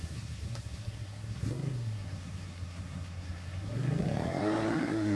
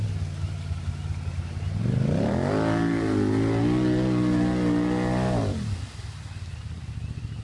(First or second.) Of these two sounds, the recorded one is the second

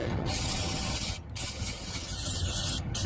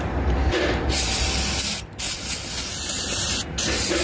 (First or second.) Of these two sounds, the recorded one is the second